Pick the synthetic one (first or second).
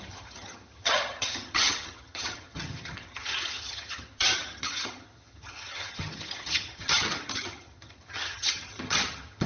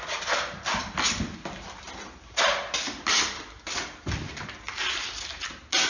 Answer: first